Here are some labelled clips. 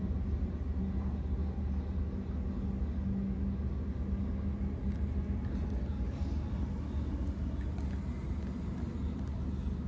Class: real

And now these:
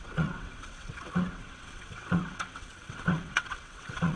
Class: fake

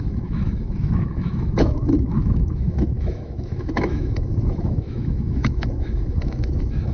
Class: fake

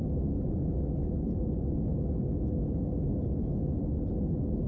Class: real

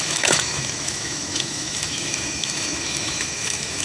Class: fake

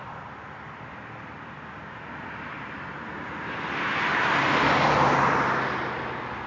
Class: real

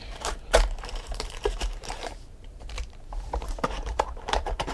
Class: fake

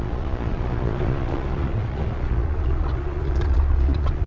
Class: fake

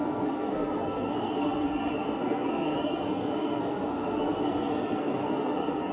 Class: fake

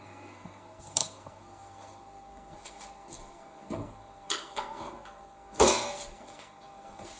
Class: fake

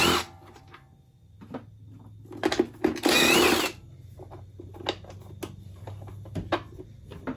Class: real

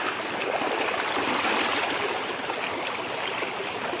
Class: real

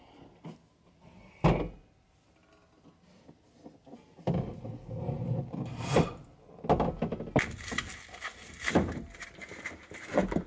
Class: real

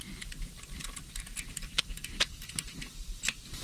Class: real